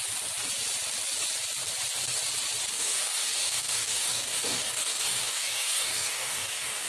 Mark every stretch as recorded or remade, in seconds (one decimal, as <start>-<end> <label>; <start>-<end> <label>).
0.0-2.7 recorded; 2.7-6.9 remade